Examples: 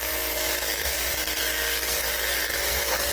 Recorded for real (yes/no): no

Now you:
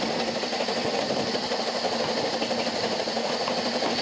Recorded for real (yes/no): yes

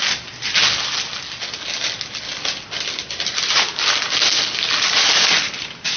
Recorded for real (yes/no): yes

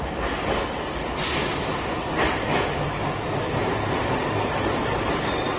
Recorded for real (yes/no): yes